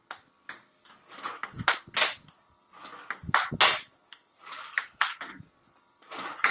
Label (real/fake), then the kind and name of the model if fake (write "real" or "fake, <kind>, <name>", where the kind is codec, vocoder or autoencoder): real